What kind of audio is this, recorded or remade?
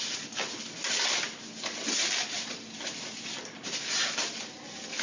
recorded